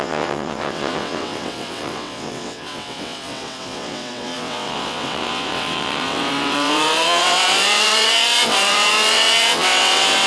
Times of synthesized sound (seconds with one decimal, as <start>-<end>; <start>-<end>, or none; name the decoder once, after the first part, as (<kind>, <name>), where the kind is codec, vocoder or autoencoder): 0.0-10.3 (vocoder, WaveNeXt)